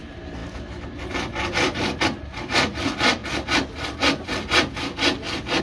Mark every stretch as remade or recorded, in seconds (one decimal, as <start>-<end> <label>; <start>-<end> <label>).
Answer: 0.0-0.4 remade; 0.4-1.0 recorded; 1.0-3.2 remade; 3.2-5.6 recorded